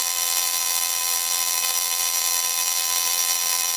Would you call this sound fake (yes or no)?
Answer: yes